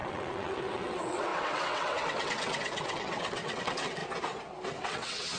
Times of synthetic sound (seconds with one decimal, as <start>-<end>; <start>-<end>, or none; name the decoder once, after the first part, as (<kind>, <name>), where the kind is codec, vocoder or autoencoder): 0.0-4.0 (vocoder, WaveNeXt); 4.7-5.4